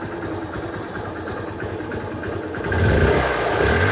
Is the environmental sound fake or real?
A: real